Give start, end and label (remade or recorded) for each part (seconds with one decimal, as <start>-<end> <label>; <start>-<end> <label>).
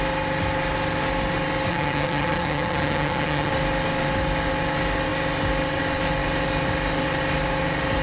0.0-1.7 recorded; 1.7-3.5 remade; 3.5-8.0 recorded